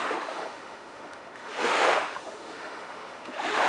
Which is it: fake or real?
fake